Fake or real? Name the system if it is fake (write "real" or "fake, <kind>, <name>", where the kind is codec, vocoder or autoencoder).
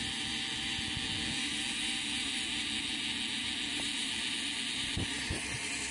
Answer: real